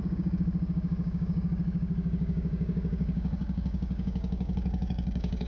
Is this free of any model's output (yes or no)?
no